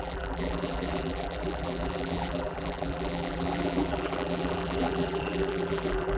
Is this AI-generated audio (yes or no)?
yes